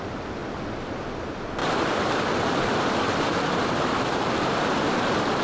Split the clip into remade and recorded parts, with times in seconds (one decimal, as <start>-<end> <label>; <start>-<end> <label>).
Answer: 0.0-1.6 recorded; 1.6-4.0 remade; 4.0-5.4 recorded